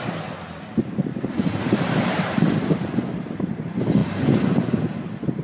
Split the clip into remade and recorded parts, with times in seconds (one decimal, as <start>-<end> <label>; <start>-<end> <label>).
0.0-1.1 recorded; 1.1-3.6 remade; 3.6-4.0 recorded; 4.0-4.8 remade; 4.8-5.4 recorded